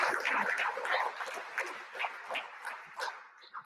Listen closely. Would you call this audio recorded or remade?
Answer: recorded